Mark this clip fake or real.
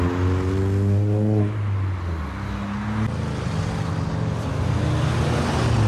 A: real